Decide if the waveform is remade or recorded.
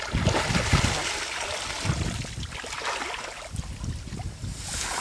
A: recorded